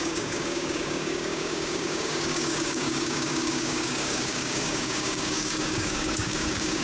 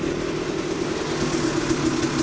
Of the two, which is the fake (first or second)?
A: first